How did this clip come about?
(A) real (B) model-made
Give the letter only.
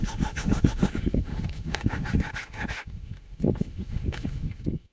B